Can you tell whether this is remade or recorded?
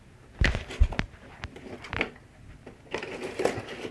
recorded